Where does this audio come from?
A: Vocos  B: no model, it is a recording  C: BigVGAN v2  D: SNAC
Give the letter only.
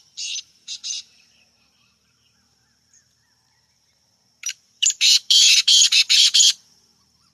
C